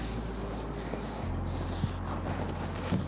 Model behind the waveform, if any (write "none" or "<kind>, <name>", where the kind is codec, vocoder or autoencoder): none